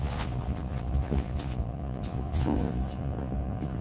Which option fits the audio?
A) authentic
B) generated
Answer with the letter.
B